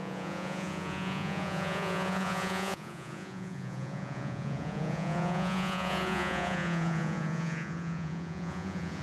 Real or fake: fake